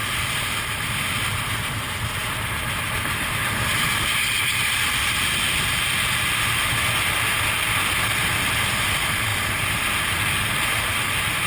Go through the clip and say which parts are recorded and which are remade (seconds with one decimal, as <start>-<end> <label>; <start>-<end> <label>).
0.0-1.5 remade; 1.5-11.5 recorded